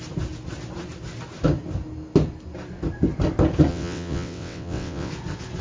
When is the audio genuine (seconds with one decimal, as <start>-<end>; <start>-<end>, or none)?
0.0-3.7; 5.1-5.6